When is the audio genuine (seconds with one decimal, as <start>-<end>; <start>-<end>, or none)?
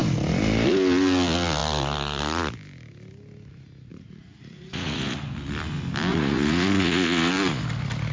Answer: 0.0-3.9; 5.2-6.1; 7.3-8.1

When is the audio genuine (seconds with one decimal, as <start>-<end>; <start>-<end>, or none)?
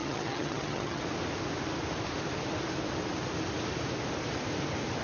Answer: 1.0-5.0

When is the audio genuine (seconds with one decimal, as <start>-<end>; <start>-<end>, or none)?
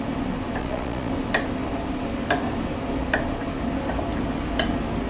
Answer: 0.0-0.6; 1.1-5.1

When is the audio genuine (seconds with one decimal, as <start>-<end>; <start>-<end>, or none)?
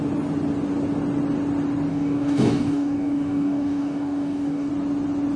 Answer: 0.0-1.9; 4.7-5.4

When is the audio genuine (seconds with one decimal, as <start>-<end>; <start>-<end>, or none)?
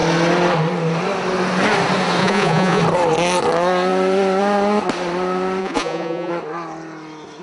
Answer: 0.0-2.2; 2.8-5.6; 6.3-7.4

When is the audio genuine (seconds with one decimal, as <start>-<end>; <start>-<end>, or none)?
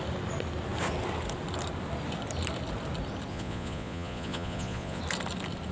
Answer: 0.0-3.3; 5.0-5.7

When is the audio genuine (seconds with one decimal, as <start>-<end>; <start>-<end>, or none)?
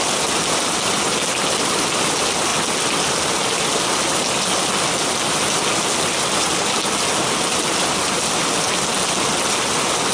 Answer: 0.0-10.1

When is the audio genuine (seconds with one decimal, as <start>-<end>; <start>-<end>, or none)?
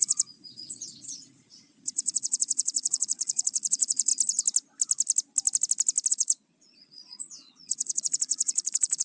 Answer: 4.1-6.1